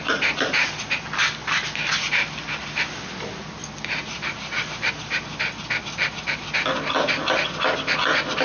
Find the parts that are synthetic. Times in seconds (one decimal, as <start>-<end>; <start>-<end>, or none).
none